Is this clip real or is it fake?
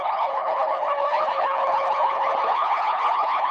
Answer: fake